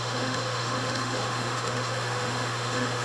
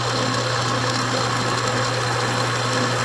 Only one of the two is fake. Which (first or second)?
first